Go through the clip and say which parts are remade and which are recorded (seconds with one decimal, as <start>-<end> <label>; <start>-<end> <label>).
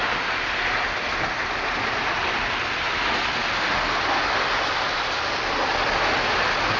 0.0-6.8 recorded